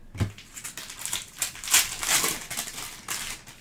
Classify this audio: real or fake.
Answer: real